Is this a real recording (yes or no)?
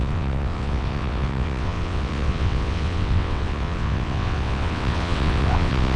no